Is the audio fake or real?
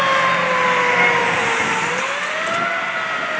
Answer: real